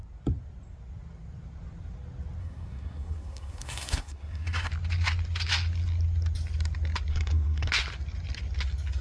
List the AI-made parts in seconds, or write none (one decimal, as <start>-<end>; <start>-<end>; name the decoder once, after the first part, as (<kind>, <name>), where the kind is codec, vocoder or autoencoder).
2.4-4.7 (codec, SNAC); 7.1-7.7